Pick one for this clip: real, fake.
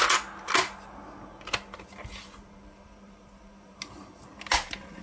real